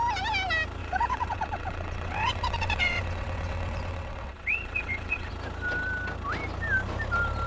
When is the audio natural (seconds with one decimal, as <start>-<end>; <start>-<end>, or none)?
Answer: 0.0-0.8; 5.3-7.5